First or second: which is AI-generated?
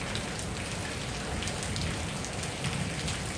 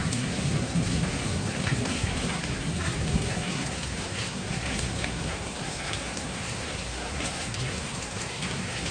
second